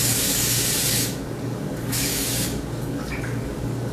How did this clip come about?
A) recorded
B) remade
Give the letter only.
B